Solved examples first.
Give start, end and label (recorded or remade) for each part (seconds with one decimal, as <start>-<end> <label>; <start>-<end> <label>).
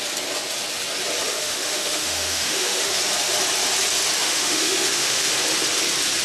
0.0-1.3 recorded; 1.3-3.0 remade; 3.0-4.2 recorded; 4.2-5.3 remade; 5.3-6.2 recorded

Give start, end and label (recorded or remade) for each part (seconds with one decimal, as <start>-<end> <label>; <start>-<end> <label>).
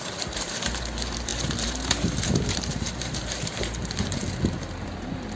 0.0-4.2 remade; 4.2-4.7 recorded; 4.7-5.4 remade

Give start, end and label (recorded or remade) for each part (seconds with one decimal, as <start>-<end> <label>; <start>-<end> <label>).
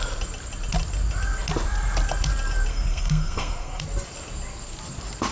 0.0-2.7 recorded; 2.7-3.8 remade; 3.8-5.3 recorded